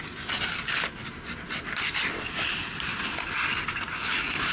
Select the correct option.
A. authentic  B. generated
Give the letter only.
A